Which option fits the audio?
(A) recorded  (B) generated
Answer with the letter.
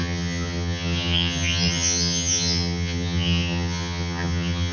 B